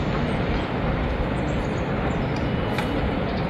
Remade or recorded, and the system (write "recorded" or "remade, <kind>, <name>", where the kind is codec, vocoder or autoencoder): recorded